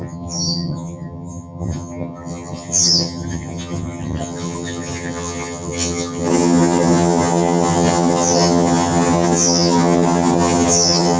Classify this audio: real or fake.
fake